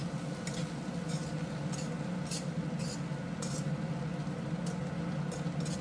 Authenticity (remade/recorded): recorded